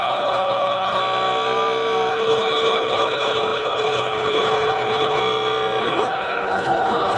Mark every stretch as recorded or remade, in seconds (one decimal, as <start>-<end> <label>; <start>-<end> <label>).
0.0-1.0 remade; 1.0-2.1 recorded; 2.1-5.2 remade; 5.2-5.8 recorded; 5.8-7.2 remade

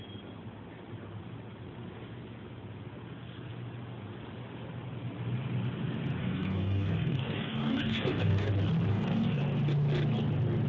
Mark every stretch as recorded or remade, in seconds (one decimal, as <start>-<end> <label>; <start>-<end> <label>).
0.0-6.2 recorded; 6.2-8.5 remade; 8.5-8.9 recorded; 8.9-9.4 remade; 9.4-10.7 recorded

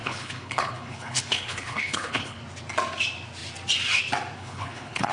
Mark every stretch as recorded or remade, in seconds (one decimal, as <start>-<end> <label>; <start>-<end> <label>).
0.0-2.4 remade; 2.4-4.4 recorded; 4.4-5.1 remade

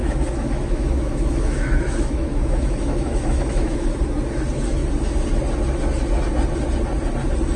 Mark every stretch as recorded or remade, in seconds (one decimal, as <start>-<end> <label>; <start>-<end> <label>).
0.0-4.0 remade; 4.0-7.6 recorded